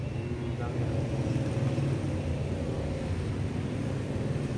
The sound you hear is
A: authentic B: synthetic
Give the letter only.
A